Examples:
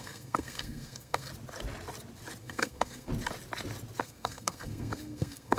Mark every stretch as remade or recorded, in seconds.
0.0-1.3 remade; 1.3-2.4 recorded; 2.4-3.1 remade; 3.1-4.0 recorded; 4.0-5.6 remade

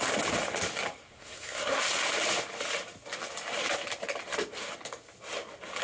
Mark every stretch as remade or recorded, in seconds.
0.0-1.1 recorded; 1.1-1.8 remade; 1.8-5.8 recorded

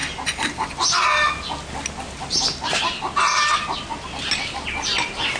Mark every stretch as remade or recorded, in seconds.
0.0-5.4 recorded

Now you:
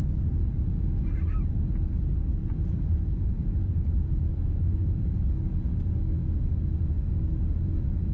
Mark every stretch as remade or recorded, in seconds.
0.0-2.4 recorded; 2.4-5.3 remade; 5.3-8.1 recorded